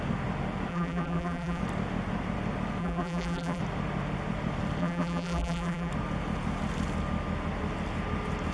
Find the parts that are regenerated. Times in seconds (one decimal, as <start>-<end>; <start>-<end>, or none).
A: 0.7-1.6; 2.8-3.6; 4.8-5.9